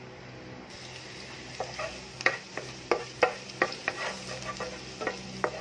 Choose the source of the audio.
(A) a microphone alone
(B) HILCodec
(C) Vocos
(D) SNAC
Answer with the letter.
A